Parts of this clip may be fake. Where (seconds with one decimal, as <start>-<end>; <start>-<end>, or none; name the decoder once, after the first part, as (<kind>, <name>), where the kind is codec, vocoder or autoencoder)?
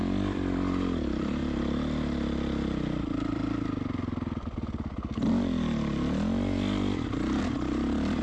0.0-1.4 (vocoder, BigVGAN v2); 3.0-3.4; 7.4-8.2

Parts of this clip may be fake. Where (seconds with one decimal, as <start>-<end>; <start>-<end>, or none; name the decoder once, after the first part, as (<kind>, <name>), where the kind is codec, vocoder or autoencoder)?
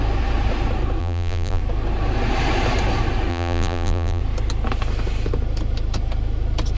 1.0-1.6 (vocoder, BigVGAN v2); 3.3-4.2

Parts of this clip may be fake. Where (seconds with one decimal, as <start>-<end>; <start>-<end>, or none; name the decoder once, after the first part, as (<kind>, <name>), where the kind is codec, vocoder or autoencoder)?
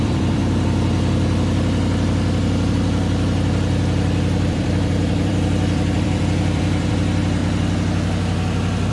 0.0-0.4 (vocoder, BigVGAN v2); 4.5-7.4